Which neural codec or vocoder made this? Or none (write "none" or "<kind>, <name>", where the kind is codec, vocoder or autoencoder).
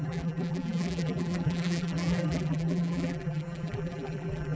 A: vocoder, BigVGAN v2